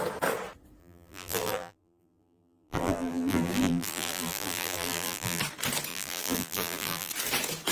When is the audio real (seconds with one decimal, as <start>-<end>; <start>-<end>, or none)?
0.0-0.8; 5.4-5.9; 7.1-7.7